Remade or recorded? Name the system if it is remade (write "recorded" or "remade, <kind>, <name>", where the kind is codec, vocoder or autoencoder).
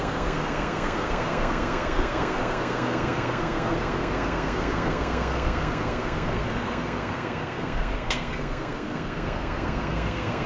remade, codec, SNAC